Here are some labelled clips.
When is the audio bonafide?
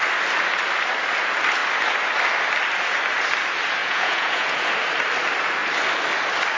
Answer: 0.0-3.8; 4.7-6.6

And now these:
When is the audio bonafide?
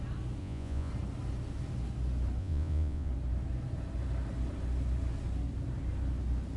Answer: 0.0-0.4; 0.9-2.4; 3.1-6.6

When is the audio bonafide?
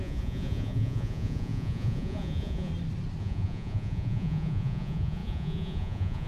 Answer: 2.7-3.2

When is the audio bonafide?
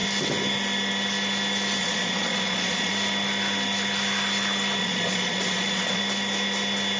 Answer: 0.0-1.8; 2.9-4.8; 6.0-7.0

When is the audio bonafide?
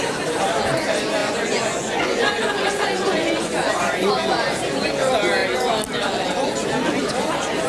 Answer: 0.0-1.2; 4.1-7.7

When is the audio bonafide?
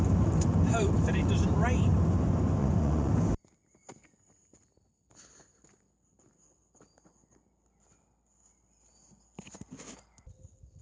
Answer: 0.0-2.6; 3.1-10.8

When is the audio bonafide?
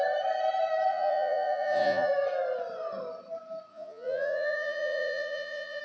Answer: 0.0-0.9; 2.1-3.7